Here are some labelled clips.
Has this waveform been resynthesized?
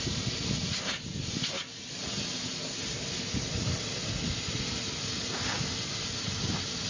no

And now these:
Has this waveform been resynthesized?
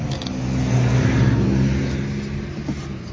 no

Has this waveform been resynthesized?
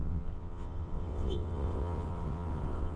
yes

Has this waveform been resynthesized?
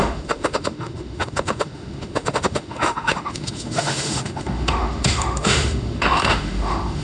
yes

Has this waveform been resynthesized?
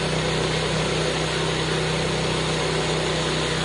no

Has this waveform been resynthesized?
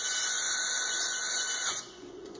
yes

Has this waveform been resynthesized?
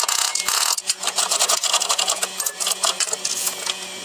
yes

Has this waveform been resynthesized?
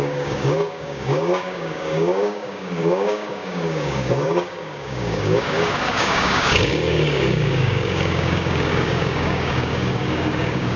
yes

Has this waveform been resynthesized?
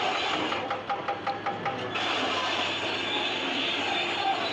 no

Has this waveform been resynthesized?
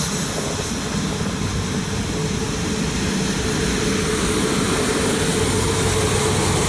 no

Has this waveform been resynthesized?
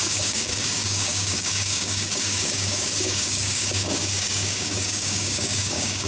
yes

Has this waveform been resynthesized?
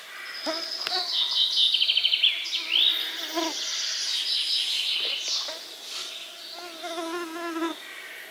no